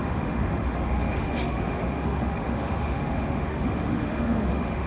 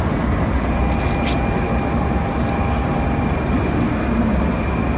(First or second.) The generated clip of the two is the first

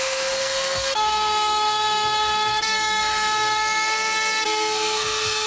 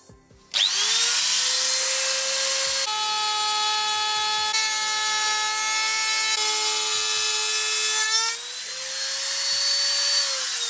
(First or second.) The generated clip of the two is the first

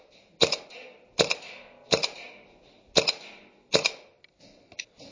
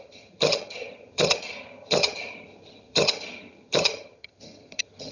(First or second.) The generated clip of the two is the second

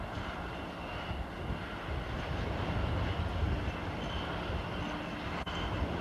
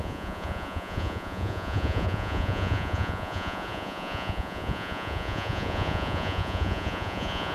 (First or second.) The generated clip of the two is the second